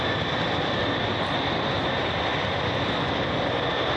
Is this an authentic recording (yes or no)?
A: yes